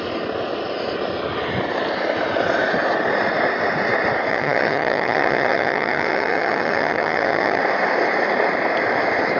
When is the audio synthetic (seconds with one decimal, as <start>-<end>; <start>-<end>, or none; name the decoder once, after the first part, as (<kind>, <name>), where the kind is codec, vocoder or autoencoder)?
4.3-7.6 (vocoder, HiFi-GAN)